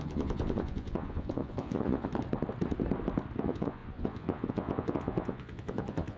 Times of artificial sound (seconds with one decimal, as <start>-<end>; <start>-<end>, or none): 0.0-2.1; 3.4-6.2